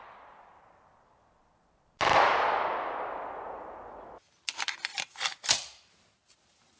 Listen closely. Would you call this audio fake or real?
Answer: real